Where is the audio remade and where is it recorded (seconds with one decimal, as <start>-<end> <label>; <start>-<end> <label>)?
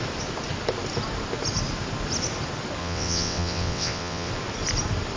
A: 0.0-2.8 recorded; 2.8-4.3 remade; 4.3-5.2 recorded